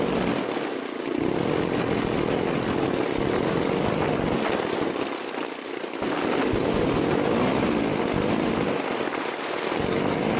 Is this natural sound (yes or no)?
yes